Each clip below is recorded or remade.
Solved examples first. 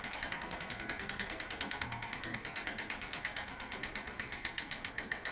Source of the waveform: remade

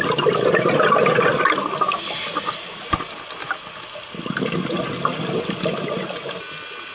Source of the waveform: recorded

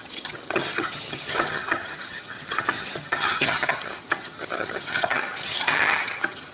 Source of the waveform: remade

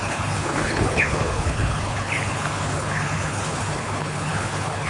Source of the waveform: remade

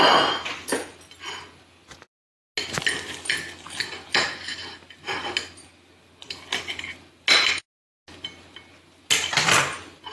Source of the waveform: recorded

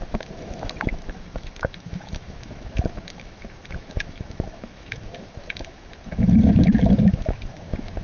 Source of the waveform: remade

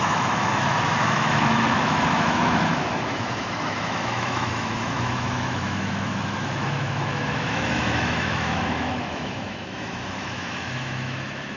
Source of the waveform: remade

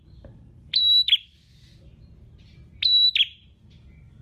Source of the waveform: recorded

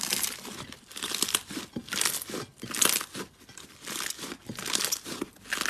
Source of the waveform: recorded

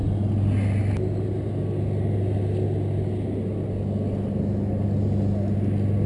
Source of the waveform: recorded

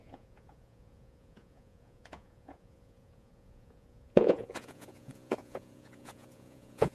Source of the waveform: remade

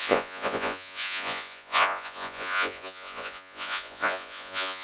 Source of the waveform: remade